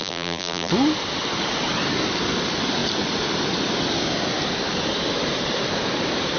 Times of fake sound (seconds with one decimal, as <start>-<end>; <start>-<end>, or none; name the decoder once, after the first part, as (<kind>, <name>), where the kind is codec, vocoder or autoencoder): 0.0-0.7 (vocoder, BigVGAN v2)